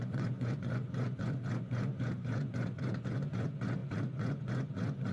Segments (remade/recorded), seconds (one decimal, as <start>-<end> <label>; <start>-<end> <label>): 0.0-5.1 remade